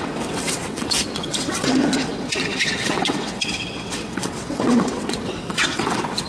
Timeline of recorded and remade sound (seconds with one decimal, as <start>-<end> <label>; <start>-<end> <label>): 0.0-6.3 remade